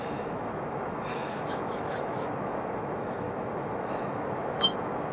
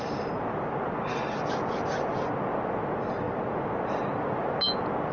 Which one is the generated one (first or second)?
first